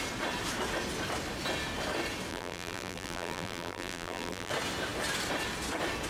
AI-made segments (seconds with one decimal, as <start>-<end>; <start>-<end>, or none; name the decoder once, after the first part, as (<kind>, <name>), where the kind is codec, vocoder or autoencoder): 2.3-4.5 (vocoder, BigVGAN v2)

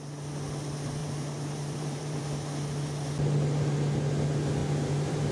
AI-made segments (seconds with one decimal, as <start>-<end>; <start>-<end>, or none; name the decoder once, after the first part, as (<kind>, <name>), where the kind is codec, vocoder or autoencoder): 1.0-2.2 (vocoder, BigVGAN v2); 4.6-5.3